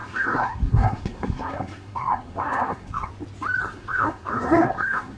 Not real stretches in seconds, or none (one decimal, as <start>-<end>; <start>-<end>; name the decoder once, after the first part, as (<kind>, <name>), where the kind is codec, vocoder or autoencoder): 0.0-3.1 (codec, SNAC); 3.6-5.2